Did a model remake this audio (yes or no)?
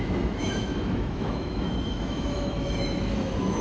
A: yes